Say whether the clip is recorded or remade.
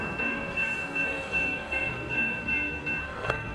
remade